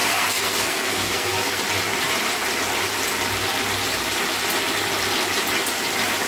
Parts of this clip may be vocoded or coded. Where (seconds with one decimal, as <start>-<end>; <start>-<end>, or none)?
0.0-1.6